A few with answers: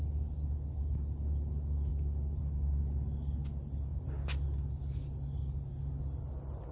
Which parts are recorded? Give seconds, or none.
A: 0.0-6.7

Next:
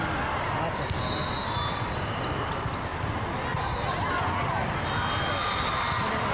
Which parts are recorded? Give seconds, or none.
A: 0.0-6.3

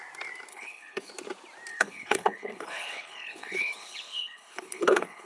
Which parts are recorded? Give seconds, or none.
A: 0.0-0.5; 1.1-1.7

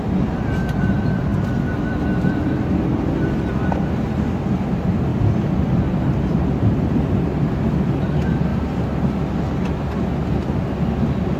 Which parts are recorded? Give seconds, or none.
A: 0.0-11.4